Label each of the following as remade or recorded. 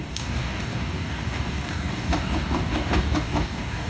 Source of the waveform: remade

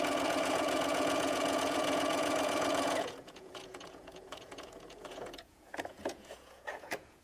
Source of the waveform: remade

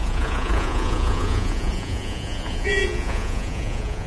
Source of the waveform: remade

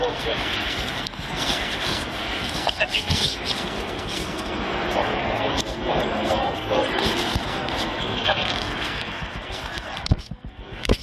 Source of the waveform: remade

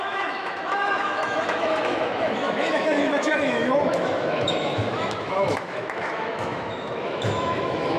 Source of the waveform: remade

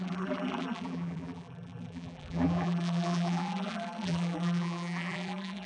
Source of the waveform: remade